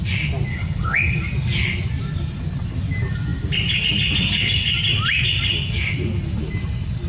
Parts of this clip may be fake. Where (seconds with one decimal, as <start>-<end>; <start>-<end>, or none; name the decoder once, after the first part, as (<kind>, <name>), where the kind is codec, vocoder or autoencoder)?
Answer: 0.5-1.2 (codec, HILCodec)